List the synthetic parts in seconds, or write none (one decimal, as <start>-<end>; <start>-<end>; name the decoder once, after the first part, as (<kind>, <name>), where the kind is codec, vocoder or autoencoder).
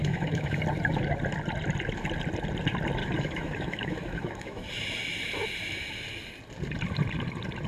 0.0-0.6 (autoencoder, DAC-VAE); 3.0-4.7